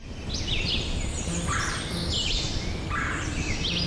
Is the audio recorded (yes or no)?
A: yes